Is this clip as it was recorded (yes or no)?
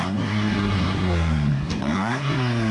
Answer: no